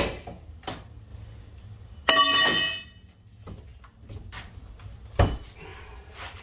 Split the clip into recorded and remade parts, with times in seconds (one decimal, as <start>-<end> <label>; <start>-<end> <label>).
0.0-6.4 recorded